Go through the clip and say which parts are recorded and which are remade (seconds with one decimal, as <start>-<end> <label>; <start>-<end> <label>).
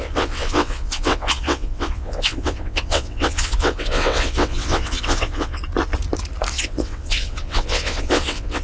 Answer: 0.0-5.6 remade; 5.6-6.5 recorded; 6.5-8.6 remade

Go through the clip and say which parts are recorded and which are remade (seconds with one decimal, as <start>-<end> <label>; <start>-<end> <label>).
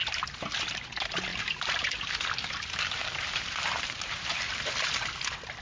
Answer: 0.0-1.3 recorded; 1.3-1.9 remade; 1.9-3.0 recorded; 3.0-4.5 remade; 4.5-5.6 recorded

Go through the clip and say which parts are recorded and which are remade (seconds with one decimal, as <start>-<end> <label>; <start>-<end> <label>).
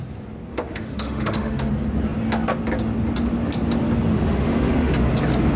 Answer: 0.0-0.5 recorded; 0.5-1.7 remade; 1.7-4.1 recorded; 4.1-4.9 remade; 4.9-5.6 recorded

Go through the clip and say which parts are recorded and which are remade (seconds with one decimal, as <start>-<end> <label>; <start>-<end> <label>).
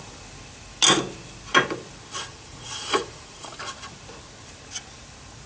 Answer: 0.0-2.3 recorded; 2.3-3.6 remade; 3.6-5.5 recorded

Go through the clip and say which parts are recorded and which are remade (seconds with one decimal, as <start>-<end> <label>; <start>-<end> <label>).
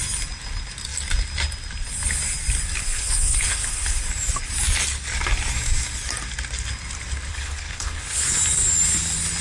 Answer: 0.0-2.8 recorded; 2.8-4.0 remade; 4.0-7.3 recorded; 7.3-8.3 remade; 8.3-9.4 recorded